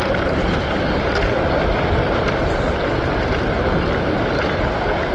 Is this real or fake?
real